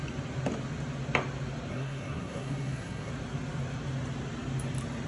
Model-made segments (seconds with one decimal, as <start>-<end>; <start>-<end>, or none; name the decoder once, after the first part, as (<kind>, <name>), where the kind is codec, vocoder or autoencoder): 1.7-3.1 (codec, SNAC)

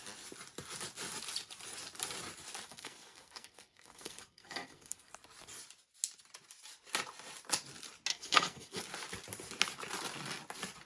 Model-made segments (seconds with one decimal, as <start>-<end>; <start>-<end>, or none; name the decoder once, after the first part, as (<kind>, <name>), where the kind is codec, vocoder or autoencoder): 2.7-5.1 (codec, SNAC); 8.1-8.8

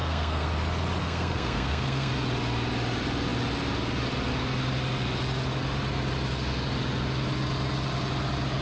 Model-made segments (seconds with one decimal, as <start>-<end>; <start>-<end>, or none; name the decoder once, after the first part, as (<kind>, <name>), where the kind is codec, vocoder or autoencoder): 0.0-0.5 (codec, SNAC); 1.0-2.1

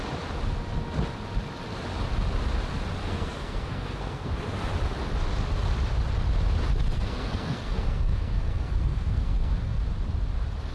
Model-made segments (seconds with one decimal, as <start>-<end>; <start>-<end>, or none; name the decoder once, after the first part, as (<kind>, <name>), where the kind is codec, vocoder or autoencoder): 3.0-4.3 (codec, SNAC); 6.9-9.8